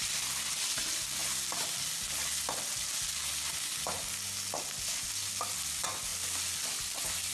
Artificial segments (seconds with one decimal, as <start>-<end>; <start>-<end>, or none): none